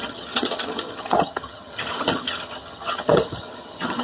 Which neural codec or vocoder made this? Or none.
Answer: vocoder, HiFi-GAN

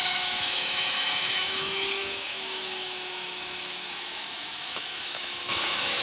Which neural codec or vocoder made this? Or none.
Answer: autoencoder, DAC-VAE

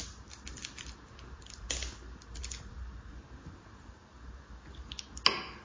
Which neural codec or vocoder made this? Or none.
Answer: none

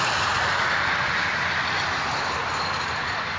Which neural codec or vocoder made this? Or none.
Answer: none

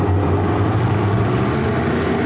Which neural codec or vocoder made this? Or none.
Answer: none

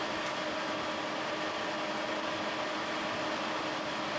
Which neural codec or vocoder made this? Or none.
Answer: none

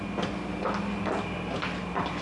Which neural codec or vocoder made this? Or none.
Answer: none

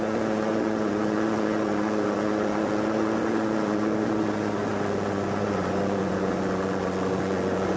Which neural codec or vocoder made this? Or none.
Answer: vocoder, Vocos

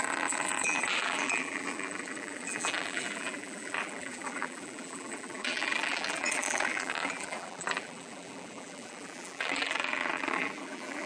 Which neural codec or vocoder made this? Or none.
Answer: vocoder, BigVGAN v2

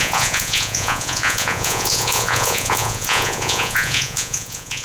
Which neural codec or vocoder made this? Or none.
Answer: vocoder, Vocos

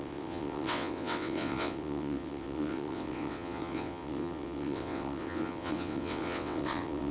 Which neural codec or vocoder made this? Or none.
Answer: vocoder, WaveNeXt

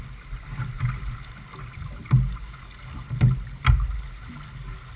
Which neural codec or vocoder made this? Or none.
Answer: none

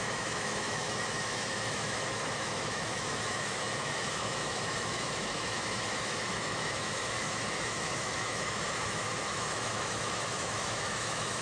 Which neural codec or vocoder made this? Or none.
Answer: autoencoder, DAC-VAE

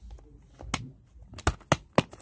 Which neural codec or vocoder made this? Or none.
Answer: none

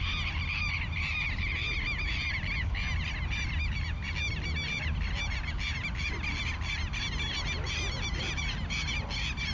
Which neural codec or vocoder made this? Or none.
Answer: none